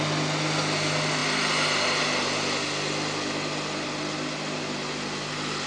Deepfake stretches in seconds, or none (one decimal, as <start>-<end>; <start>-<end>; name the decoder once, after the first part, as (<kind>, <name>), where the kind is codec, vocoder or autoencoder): none